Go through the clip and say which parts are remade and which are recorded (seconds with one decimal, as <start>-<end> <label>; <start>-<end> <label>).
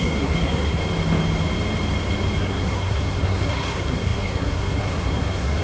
0.0-0.8 remade; 0.8-2.4 recorded; 2.4-5.6 remade